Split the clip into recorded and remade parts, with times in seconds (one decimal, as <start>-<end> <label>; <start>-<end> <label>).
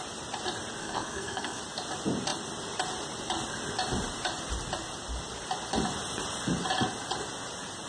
0.0-0.8 recorded; 0.8-1.6 remade; 1.6-7.9 recorded